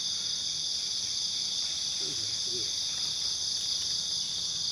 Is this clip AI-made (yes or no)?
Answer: no